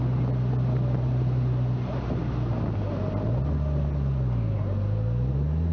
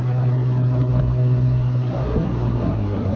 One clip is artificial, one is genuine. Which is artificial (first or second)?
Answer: second